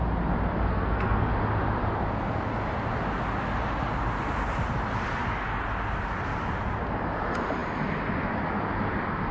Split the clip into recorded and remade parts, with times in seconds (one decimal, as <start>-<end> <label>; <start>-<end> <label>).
0.0-0.7 recorded; 0.7-1.3 remade; 1.3-9.3 recorded